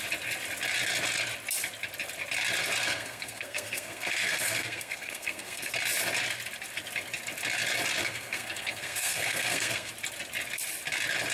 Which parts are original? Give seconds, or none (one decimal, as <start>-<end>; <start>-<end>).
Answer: 0.0-2.8; 5.7-8.0; 9.9-11.3